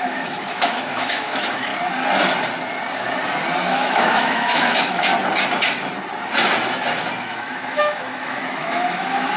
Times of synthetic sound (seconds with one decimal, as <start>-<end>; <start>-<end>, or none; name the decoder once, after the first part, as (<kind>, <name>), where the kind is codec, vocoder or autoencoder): 0.0-1.7 (autoencoder, DAC-VAE); 3.7-5.1; 7.2-9.4